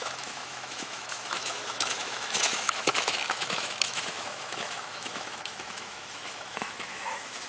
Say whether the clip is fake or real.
fake